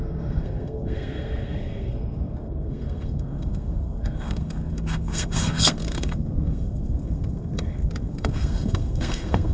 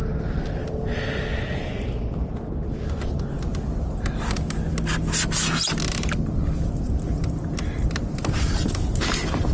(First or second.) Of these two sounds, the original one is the second